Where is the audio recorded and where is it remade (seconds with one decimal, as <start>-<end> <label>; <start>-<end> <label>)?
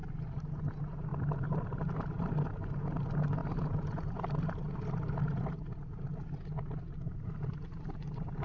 0.0-8.4 recorded